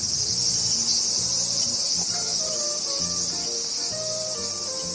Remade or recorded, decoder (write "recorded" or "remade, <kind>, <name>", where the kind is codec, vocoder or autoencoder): remade, vocoder, BigVGAN v2